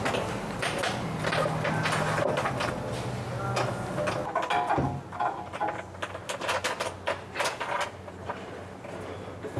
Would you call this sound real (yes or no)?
yes